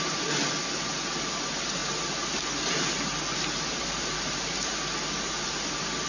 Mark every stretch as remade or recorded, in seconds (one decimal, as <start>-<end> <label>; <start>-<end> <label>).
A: 0.0-6.1 recorded